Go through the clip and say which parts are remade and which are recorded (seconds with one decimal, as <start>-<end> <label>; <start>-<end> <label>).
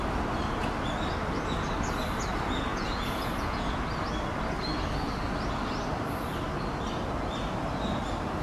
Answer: 0.0-2.7 recorded; 2.7-3.8 remade; 3.8-8.4 recorded